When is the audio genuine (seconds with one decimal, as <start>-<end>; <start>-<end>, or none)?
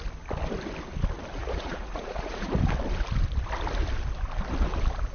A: 0.0-1.4; 2.6-5.1